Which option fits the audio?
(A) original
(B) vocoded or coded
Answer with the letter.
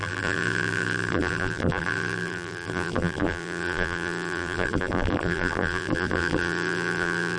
B